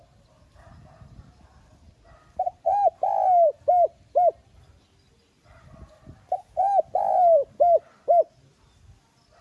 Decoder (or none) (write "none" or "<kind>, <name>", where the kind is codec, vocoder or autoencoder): none